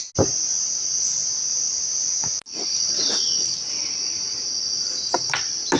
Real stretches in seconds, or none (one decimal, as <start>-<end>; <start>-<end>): 0.0-5.8